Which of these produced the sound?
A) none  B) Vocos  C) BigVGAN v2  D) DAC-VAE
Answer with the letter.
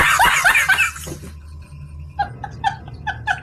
A